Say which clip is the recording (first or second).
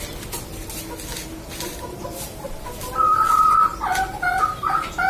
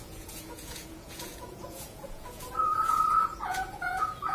first